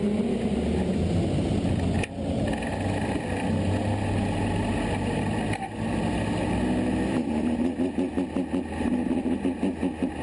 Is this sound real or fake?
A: real